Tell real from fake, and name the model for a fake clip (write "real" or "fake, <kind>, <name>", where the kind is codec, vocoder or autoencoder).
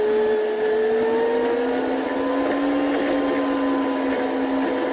real